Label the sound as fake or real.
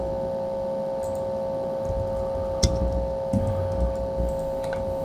real